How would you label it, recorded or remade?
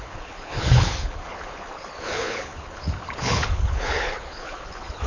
remade